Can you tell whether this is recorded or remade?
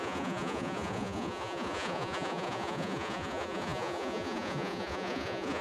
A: remade